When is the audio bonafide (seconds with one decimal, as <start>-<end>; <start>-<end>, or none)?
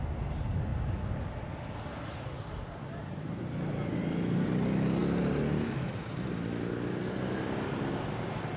0.0-8.6